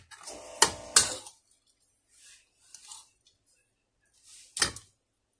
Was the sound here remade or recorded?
recorded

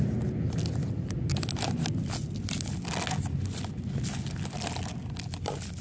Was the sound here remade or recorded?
recorded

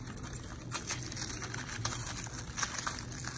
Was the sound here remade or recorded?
recorded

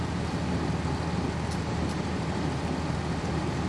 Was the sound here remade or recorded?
recorded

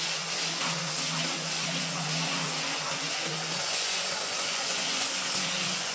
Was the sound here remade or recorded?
remade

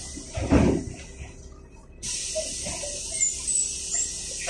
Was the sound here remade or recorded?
recorded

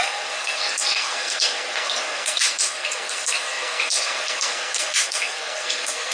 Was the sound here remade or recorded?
remade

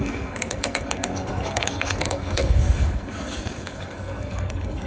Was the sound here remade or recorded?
remade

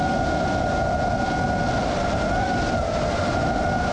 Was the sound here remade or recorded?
recorded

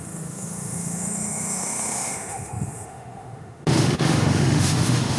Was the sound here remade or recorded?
remade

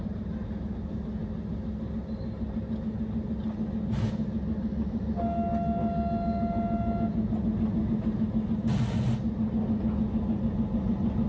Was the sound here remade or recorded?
recorded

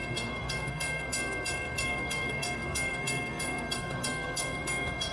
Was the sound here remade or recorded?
remade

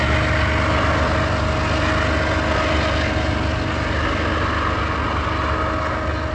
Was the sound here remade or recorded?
recorded